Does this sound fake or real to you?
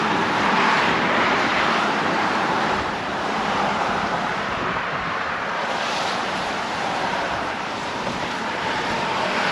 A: fake